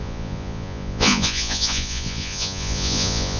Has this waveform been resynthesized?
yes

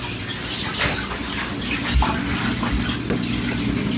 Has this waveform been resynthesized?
no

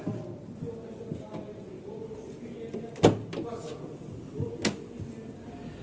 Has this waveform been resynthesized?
no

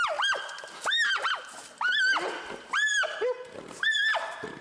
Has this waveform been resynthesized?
no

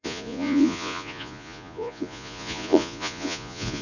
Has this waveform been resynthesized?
yes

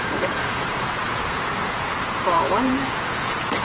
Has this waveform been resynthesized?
yes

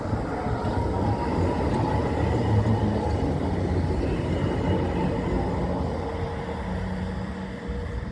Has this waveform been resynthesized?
no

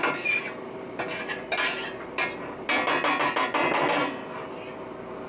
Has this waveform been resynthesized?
no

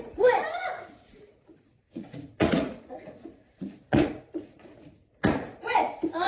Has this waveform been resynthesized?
yes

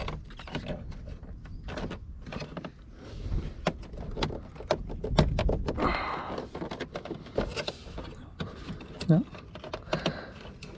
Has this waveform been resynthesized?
no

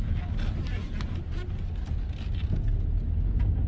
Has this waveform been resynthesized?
no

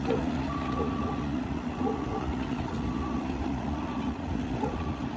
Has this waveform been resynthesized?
yes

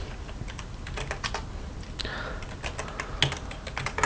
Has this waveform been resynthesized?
no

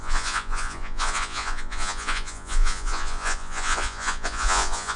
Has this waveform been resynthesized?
yes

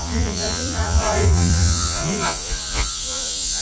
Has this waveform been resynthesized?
yes